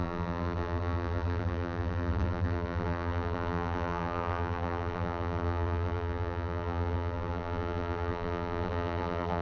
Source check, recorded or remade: remade